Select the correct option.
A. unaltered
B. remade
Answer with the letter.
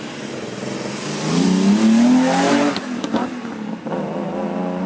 A